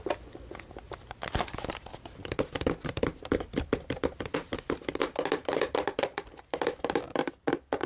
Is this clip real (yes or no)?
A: yes